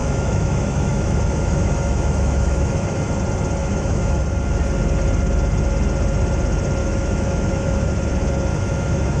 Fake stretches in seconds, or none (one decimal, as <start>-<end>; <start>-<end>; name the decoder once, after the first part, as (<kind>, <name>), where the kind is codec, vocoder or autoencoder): 0.0-3.1 (autoencoder, DAC-VAE); 3.6-4.2; 6.8-7.9; 8.5-9.2